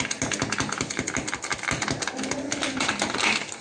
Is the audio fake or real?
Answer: real